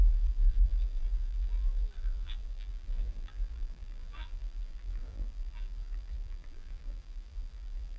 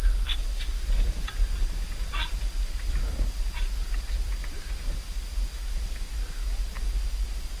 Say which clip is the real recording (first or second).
second